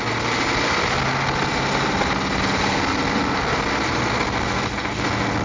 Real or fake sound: real